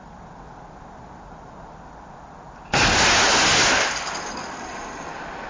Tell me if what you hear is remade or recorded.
recorded